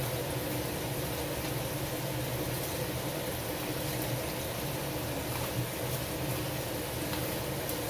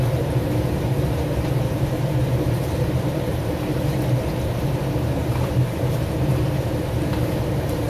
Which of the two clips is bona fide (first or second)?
first